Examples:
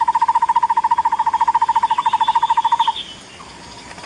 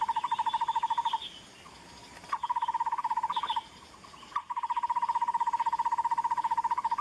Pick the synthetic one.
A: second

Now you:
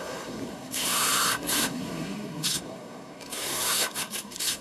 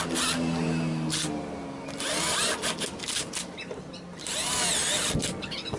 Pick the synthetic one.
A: first